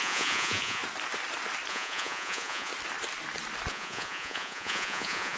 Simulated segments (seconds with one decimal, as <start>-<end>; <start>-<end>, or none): 0.0-0.8; 1.7-2.7; 3.7-5.4

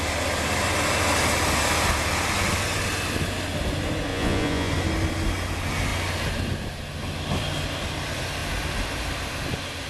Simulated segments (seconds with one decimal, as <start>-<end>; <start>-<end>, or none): 4.1-4.7

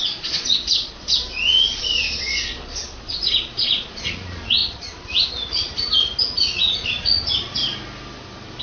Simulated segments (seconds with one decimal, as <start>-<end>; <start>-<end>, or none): 0.0-5.7; 6.4-7.6

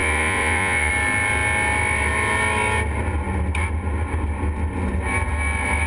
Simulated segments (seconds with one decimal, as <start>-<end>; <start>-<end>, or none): 0.0-0.9

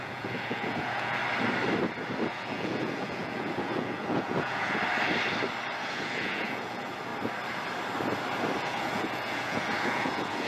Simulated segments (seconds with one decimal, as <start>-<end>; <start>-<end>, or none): 0.0-1.2; 2.3-4.8; 5.8-7.1; 8.6-10.5

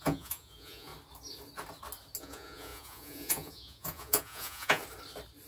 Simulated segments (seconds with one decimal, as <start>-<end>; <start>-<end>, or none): 0.0-0.9; 2.2-4.8

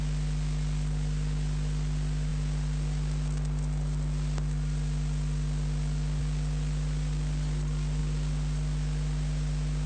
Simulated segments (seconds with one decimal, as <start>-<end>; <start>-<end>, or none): none

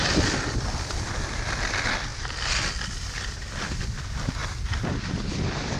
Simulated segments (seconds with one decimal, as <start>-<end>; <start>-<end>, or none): none